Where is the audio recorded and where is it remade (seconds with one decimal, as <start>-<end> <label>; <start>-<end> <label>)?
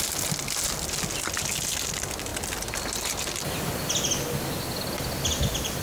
0.0-5.8 recorded